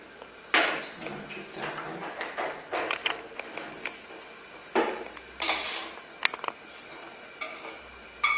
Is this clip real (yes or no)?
yes